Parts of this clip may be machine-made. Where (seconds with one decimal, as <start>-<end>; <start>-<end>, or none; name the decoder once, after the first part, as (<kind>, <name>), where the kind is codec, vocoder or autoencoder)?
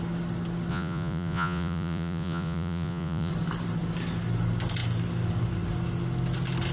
0.7-3.3 (vocoder, Vocos)